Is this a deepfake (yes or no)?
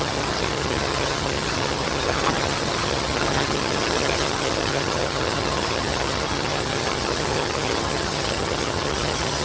yes